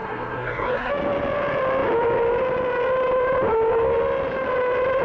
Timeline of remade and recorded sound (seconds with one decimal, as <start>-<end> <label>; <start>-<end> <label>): 0.0-0.9 remade; 0.9-5.0 recorded